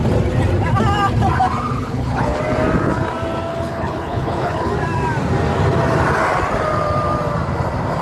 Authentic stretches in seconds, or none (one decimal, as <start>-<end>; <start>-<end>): 0.0-1.7; 2.4-3.5; 4.7-8.0